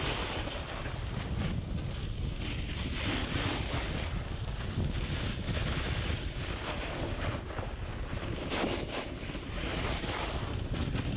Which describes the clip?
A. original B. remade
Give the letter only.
A